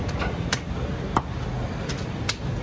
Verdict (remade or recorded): recorded